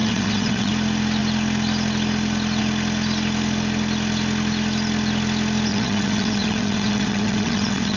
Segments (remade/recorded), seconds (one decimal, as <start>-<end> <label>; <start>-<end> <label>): 0.0-0.7 remade; 0.7-5.7 recorded; 5.7-8.0 remade